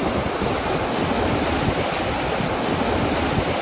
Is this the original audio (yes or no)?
yes